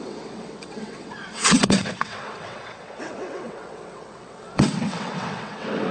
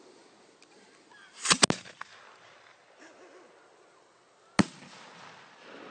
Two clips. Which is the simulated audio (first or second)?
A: first